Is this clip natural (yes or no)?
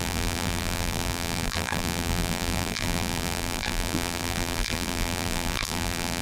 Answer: no